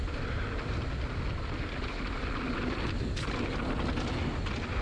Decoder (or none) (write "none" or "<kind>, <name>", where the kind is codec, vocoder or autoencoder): none